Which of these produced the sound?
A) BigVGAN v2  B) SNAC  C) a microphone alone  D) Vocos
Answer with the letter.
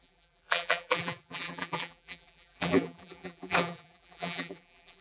A